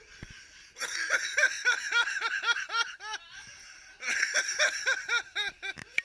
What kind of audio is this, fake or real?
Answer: real